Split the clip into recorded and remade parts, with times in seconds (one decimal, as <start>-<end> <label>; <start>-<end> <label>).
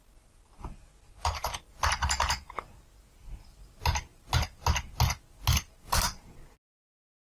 0.0-7.4 recorded